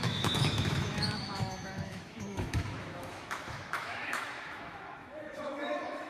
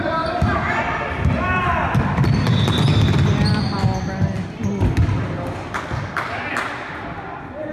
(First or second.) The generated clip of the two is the first